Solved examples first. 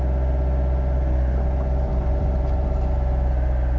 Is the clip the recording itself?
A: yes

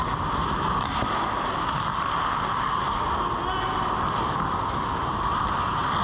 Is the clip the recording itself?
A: yes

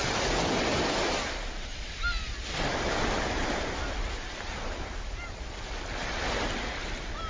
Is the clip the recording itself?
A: yes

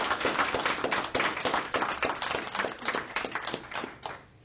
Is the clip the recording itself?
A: yes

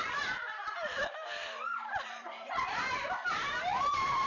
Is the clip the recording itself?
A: no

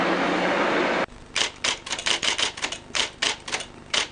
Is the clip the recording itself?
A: yes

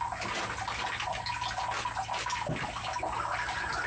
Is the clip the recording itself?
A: yes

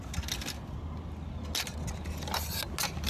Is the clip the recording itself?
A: yes